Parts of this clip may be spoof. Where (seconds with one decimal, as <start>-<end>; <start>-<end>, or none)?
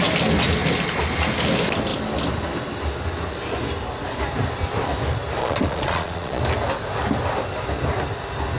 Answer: 5.4-6.4